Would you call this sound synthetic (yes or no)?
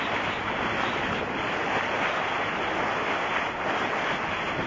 no